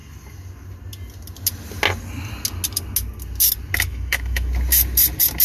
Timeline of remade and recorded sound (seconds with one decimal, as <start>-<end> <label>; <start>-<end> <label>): 0.0-3.9 recorded; 3.9-4.5 remade; 4.5-5.4 recorded